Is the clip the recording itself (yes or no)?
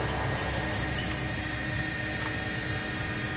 yes